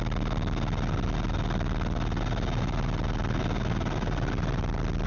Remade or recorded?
recorded